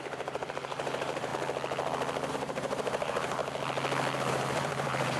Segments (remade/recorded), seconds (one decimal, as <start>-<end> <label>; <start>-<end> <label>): 0.0-1.3 remade; 1.3-2.3 recorded; 2.3-3.4 remade; 3.4-4.3 recorded; 4.3-5.2 remade

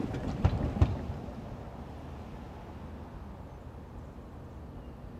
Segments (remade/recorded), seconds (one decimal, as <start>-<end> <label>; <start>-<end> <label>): 0.0-5.2 recorded

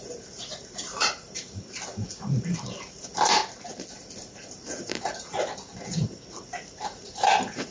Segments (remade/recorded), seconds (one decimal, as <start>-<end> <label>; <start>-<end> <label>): 0.0-3.4 remade; 3.4-3.9 recorded; 3.9-7.7 remade

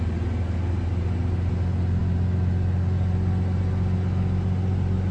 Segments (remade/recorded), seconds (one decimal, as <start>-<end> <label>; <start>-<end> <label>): 0.0-5.1 recorded

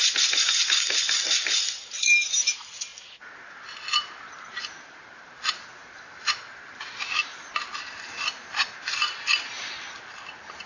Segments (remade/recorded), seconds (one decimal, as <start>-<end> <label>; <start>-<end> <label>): 0.0-5.8 recorded; 5.8-7.5 remade; 7.5-10.7 recorded